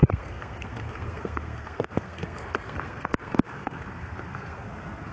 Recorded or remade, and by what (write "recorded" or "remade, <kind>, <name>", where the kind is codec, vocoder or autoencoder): remade, codec, SNAC